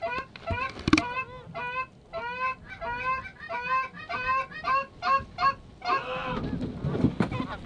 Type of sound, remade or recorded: recorded